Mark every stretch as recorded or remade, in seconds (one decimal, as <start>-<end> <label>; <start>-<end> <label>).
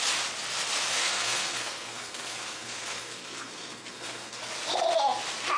0.0-1.0 recorded; 1.0-4.4 remade; 4.4-5.6 recorded